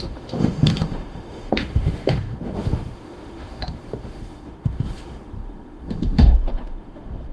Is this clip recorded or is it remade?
remade